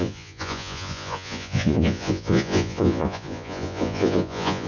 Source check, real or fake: fake